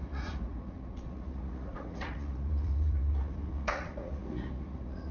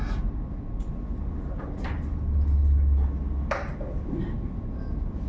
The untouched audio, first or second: second